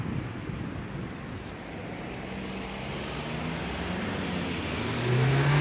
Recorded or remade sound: recorded